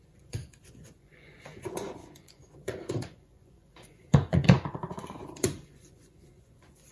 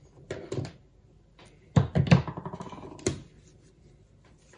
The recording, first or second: second